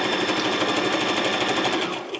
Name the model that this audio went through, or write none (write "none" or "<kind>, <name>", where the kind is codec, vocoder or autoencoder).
none